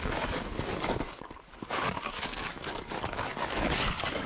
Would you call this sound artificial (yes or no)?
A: yes